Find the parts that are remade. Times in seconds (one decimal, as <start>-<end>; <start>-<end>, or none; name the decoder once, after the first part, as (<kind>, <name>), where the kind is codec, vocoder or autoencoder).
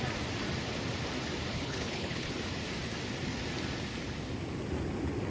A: 1.5-2.3 (codec, HILCodec)